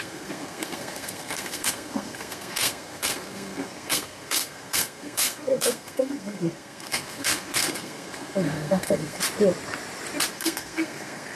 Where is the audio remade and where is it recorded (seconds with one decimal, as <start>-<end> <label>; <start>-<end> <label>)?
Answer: 0.0-9.2 remade; 9.2-10.3 recorded; 10.3-11.4 remade